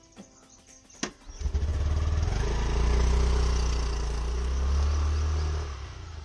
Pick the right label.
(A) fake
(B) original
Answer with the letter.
B